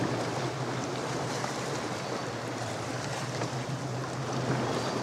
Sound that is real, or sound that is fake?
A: real